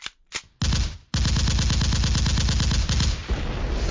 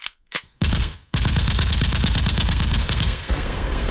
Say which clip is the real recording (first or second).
first